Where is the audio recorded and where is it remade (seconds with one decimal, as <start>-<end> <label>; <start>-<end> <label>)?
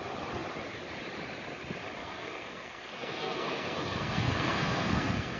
0.0-2.0 recorded; 2.0-5.4 remade